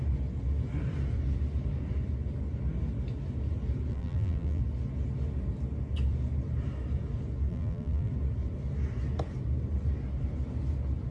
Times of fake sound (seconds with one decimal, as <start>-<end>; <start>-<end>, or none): 3.9-4.6; 7.5-8.1